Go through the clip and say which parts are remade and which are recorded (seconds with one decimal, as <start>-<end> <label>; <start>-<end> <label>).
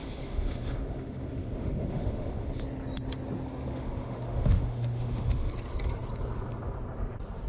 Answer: 0.0-2.5 remade; 2.5-3.7 recorded; 3.7-5.5 remade; 5.5-7.5 recorded